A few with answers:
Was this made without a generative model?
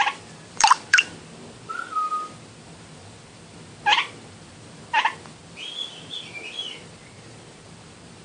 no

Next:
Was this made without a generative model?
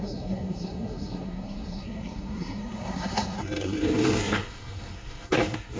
no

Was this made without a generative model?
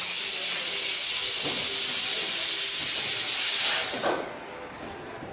yes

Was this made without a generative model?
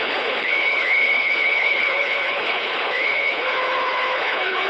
no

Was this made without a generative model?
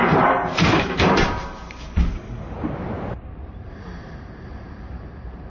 no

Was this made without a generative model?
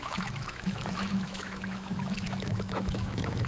no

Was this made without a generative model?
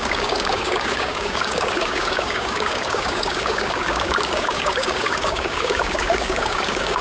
no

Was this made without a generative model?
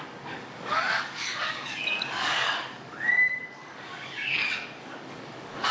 no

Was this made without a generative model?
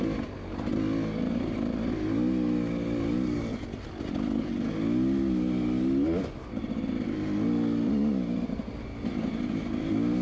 yes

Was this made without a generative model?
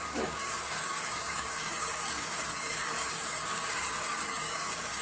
no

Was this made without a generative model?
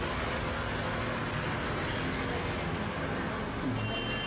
yes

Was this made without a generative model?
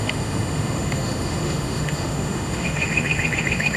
no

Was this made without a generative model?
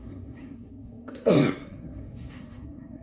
no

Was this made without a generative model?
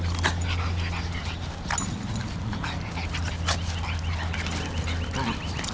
yes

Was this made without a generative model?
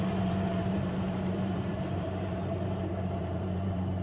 no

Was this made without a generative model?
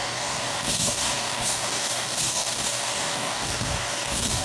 no